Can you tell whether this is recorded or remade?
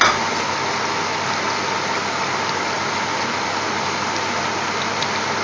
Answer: recorded